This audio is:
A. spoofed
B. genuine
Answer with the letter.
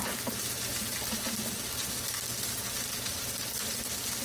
B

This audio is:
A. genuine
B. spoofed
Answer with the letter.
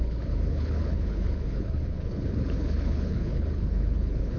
B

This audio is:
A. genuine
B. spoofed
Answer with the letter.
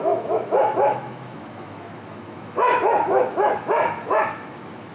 B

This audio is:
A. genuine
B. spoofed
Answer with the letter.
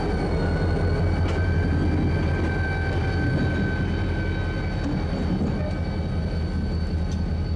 A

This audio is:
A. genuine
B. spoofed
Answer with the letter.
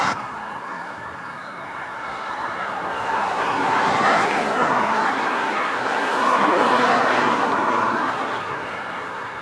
B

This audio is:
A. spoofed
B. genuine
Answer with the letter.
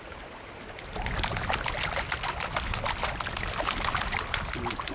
B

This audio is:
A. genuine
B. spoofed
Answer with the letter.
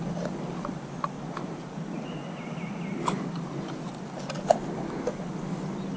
A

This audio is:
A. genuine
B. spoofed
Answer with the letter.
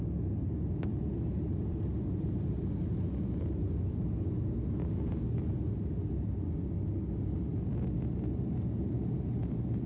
A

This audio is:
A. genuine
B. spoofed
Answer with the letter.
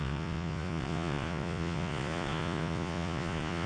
B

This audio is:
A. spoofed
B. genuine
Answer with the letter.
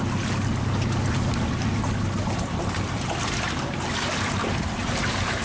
B